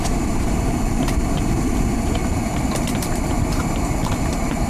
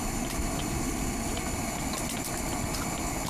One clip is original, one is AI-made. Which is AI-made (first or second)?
first